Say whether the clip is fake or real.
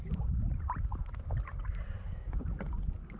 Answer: real